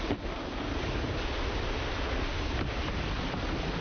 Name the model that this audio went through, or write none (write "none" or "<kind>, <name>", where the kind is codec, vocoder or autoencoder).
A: none